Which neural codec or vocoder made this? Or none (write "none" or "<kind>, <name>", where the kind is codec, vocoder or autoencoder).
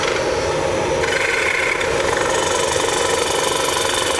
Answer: none